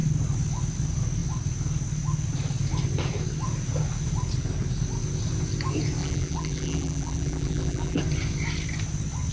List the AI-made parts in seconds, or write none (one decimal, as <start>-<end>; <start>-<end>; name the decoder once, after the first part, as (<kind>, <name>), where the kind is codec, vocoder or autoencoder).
6.0-8.0 (vocoder, BigVGAN v2)